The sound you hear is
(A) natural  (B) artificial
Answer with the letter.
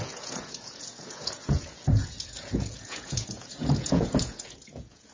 B